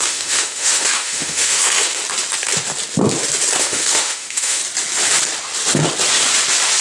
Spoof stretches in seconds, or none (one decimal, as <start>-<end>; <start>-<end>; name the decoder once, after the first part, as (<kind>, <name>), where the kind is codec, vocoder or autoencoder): 0.0-2.0 (autoencoder, DAC-VAE); 3.6-4.6